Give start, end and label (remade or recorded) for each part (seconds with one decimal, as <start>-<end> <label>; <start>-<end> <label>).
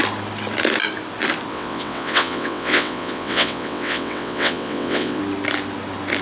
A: 0.0-1.5 recorded; 1.5-5.2 remade; 5.2-6.2 recorded